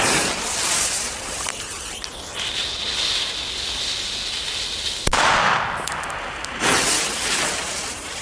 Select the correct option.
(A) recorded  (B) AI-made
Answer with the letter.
A